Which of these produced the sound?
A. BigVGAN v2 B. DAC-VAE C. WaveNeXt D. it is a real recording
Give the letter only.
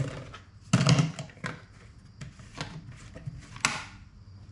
D